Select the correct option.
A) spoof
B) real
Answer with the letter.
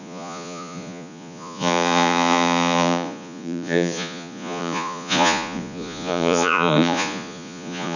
A